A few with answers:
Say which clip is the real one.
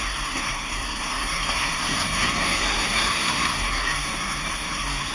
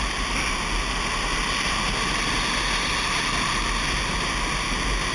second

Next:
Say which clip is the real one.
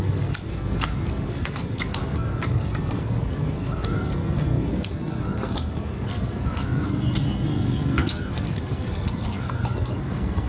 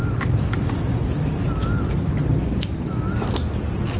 second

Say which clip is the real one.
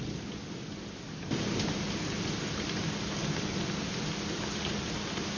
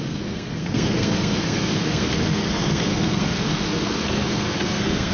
first